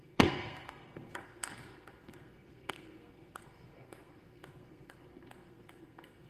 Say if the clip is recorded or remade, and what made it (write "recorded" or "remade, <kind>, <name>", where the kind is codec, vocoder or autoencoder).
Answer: remade, codec, SNAC